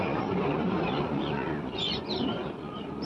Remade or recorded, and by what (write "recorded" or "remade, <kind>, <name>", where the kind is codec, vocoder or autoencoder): remade, vocoder, Vocos